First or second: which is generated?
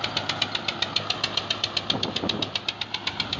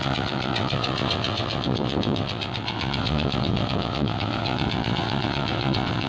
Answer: second